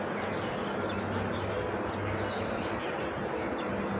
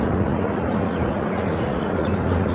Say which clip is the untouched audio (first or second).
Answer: first